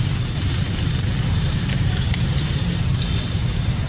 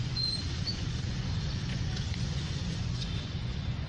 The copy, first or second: second